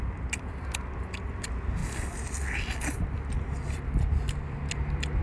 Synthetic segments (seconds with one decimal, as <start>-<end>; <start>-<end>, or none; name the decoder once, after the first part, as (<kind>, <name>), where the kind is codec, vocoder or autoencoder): none